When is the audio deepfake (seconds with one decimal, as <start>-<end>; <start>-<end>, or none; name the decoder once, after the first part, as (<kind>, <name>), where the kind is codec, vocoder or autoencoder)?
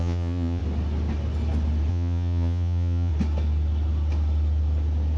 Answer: 0.0-0.6 (vocoder, Vocos); 1.9-3.1